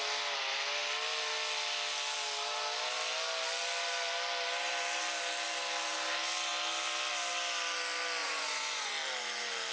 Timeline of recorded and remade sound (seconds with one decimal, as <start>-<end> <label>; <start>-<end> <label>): 0.0-8.2 recorded; 8.2-8.9 remade; 8.9-9.7 recorded